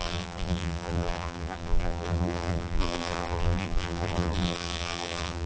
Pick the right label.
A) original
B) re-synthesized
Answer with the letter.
B